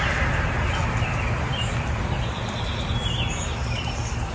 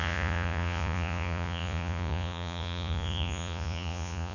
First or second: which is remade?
second